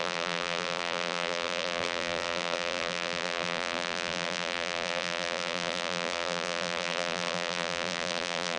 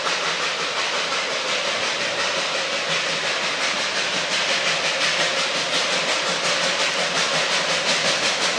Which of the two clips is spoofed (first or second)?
first